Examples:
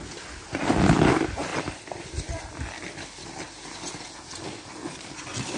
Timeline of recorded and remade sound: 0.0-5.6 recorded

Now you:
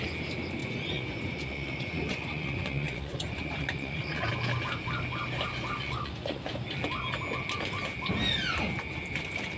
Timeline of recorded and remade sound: 0.0-0.6 recorded; 0.6-4.3 remade; 4.3-5.8 recorded; 5.8-6.4 remade; 6.4-9.6 recorded

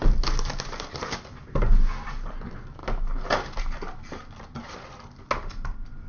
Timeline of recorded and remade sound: 0.0-6.1 recorded

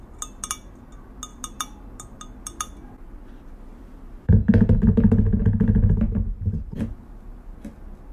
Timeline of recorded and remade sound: 0.0-8.1 recorded

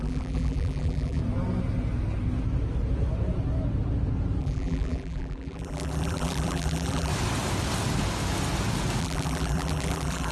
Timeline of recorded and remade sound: 0.0-1.2 remade; 1.2-4.4 recorded; 4.4-7.1 remade; 7.1-9.0 recorded; 9.0-10.3 remade

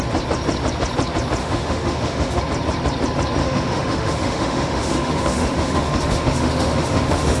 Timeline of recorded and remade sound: 0.0-1.4 recorded; 1.4-2.4 remade; 2.4-3.4 recorded; 3.4-7.4 remade

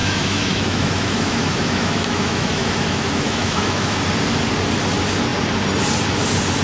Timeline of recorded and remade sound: 0.0-4.0 remade; 4.0-6.6 recorded